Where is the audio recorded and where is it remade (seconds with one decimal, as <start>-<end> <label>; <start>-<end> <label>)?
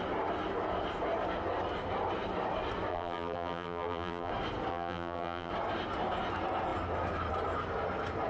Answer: 0.0-2.9 recorded; 2.9-4.3 remade; 4.3-4.7 recorded; 4.7-5.5 remade; 5.5-8.3 recorded